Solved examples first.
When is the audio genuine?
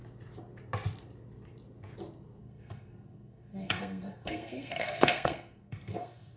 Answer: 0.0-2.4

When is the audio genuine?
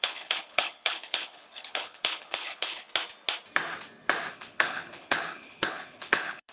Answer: 2.9-4.3